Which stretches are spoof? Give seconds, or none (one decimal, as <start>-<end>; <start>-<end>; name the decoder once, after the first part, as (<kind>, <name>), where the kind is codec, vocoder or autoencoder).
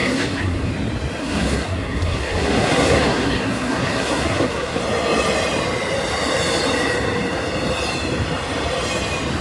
0.0-0.7 (codec, SNAC); 1.2-4.8